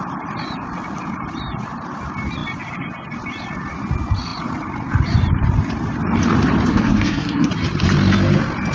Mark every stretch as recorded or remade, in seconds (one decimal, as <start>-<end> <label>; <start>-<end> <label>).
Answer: 0.0-6.7 recorded; 6.7-7.5 remade; 7.5-8.7 recorded